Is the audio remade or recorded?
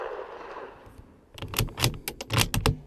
recorded